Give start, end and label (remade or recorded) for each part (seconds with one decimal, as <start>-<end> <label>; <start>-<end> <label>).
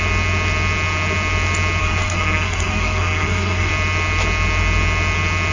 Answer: 0.0-1.8 recorded; 1.8-3.7 remade; 3.7-5.5 recorded